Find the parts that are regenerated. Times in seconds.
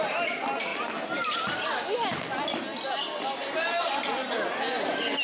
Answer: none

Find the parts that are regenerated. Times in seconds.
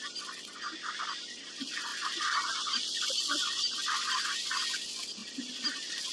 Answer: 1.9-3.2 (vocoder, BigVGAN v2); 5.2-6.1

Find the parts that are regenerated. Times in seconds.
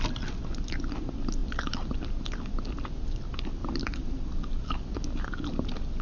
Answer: 3.6-4.2 (vocoder, BigVGAN v2)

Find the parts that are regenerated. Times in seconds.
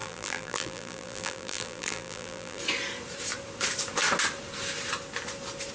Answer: 0.0-2.6 (vocoder, BigVGAN v2)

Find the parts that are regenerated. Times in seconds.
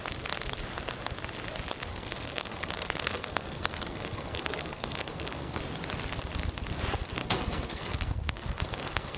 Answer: 1.9-5.6 (codec, SNAC); 7.2-9.2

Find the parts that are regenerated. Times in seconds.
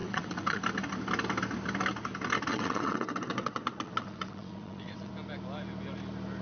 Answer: 0.0-0.6 (vocoder, WaveNeXt); 2.5-5.1